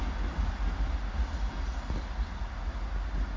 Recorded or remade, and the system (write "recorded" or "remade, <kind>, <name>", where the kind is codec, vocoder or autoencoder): recorded